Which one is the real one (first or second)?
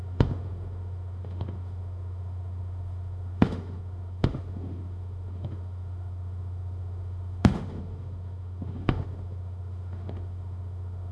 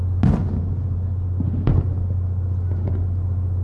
second